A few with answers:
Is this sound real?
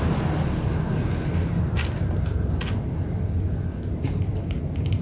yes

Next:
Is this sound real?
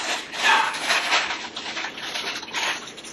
yes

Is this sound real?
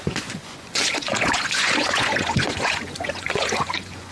no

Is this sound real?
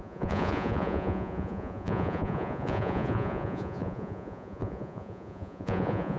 no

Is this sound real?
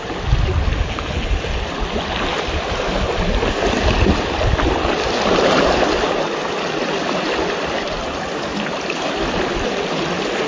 yes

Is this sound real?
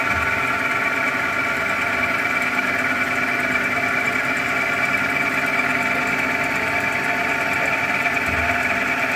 yes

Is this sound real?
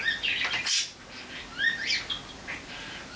yes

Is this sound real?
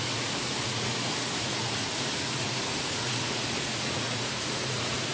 no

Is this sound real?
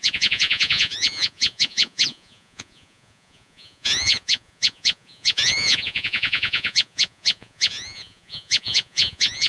no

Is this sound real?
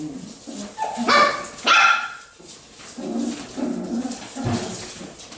yes